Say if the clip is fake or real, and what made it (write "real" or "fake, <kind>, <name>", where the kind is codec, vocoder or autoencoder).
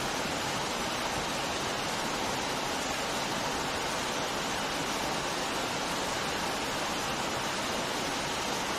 real